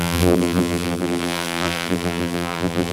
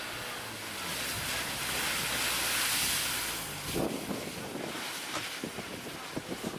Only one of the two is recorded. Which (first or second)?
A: second